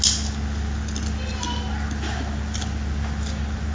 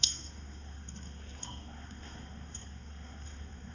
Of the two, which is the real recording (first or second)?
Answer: first